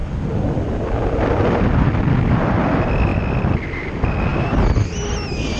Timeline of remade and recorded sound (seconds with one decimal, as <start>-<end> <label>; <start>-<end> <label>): 0.0-5.6 recorded